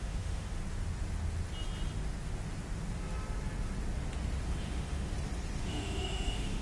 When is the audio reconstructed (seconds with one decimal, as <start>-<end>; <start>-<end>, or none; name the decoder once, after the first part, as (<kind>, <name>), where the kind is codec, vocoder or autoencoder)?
0.0-0.6 (autoencoder, DAC-VAE); 4.6-5.1; 5.6-6.6